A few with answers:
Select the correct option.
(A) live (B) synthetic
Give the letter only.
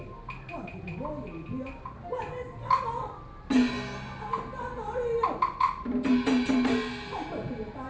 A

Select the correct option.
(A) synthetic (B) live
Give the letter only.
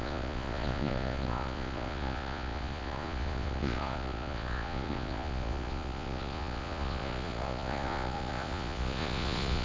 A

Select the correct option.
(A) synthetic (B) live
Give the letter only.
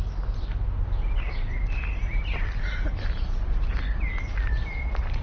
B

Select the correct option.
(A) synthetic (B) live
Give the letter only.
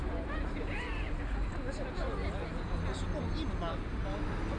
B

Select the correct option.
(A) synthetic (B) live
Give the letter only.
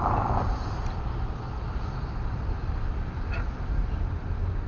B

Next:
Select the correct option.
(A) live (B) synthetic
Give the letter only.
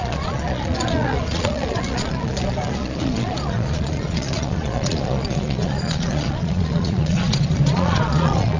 B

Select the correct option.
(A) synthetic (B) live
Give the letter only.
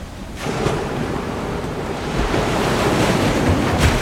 A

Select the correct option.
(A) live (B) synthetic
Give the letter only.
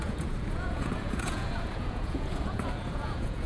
B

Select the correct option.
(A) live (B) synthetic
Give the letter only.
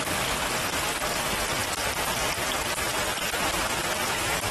A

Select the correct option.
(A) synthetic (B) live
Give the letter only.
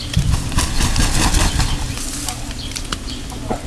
B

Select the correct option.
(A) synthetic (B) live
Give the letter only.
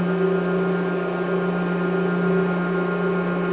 B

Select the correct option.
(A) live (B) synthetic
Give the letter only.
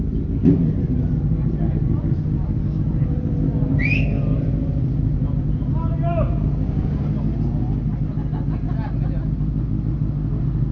A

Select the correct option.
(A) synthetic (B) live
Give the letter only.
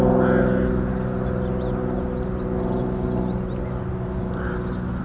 B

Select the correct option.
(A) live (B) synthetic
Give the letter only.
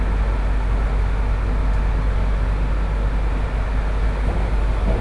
A